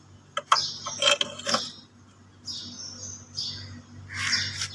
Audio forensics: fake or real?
real